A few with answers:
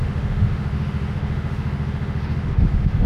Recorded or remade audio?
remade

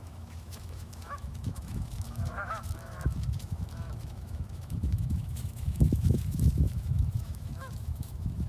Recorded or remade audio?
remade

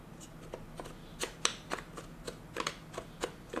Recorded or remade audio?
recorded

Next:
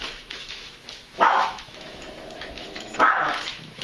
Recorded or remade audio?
remade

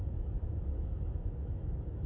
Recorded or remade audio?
remade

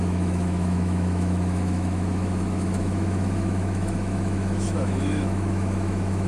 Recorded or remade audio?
remade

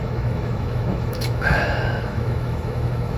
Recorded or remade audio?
remade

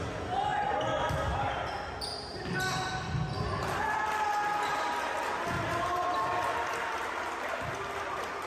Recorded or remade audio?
recorded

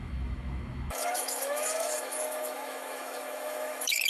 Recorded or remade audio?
remade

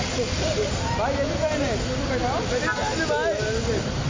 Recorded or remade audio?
recorded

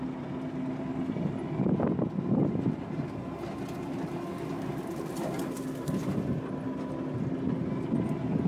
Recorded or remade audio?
recorded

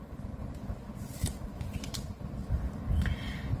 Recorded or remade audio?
recorded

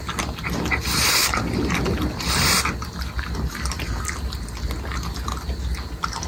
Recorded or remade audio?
recorded